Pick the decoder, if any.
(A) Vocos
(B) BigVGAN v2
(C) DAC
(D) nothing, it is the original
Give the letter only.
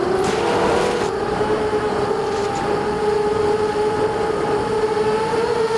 D